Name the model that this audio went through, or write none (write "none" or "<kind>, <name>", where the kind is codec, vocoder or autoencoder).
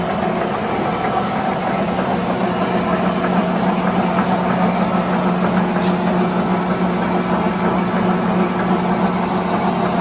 none